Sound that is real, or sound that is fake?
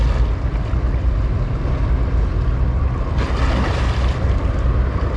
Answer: real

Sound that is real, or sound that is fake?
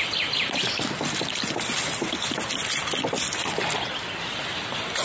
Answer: real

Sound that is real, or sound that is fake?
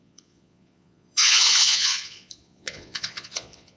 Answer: fake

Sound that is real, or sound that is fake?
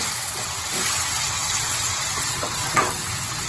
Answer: fake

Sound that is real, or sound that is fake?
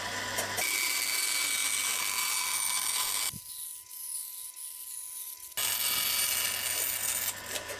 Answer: real